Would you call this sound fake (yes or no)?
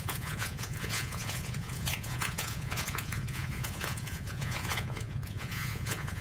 yes